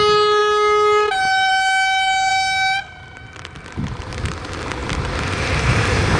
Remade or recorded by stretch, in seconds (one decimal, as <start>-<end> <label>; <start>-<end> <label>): 0.0-6.2 recorded